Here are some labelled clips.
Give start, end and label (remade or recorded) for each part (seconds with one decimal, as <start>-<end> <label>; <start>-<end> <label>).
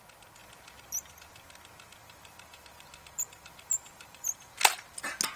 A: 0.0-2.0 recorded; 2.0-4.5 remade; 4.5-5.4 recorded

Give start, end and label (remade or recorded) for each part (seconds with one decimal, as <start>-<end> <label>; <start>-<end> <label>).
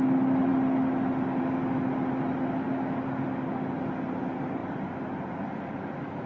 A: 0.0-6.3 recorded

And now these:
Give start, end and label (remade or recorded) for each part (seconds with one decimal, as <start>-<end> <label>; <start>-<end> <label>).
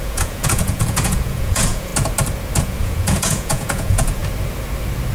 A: 0.0-1.9 remade; 1.9-2.6 recorded; 2.6-4.2 remade; 4.2-5.1 recorded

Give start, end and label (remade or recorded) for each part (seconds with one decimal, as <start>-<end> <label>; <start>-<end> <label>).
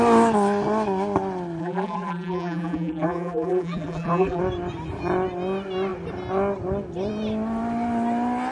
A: 0.0-1.6 recorded; 1.6-4.4 remade; 4.4-8.5 recorded